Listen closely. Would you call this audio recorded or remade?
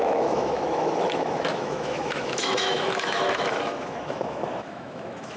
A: remade